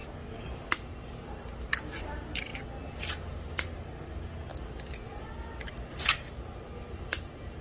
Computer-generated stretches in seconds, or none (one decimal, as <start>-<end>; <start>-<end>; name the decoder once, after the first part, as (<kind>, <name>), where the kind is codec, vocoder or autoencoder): 4.5-5.7 (vocoder, BigVGAN v2)